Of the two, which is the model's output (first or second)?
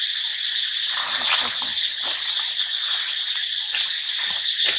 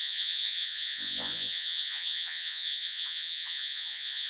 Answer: second